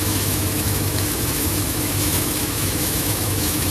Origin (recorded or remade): remade